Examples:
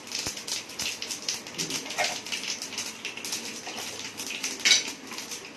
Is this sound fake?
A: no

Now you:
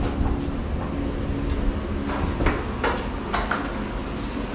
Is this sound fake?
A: no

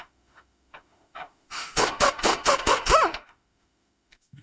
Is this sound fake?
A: yes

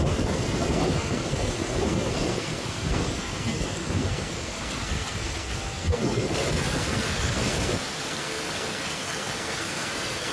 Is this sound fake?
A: yes